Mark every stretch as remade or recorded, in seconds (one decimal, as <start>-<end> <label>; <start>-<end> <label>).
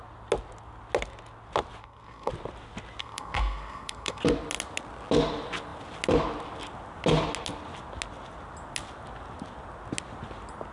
0.0-1.8 recorded; 1.8-2.3 remade; 2.3-3.0 recorded; 3.0-4.2 remade; 4.2-10.7 recorded